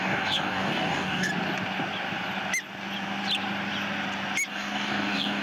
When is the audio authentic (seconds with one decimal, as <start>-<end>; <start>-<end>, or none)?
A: 1.3-4.5